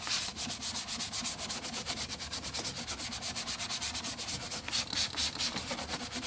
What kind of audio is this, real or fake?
real